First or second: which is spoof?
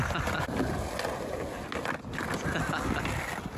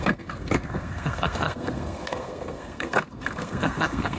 second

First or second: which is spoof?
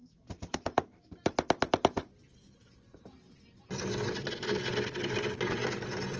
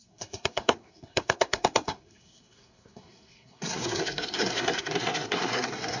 second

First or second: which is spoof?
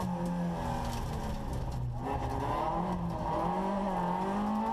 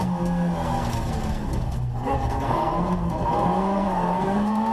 second